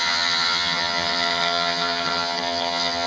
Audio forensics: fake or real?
fake